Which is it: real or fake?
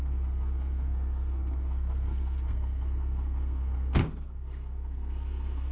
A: fake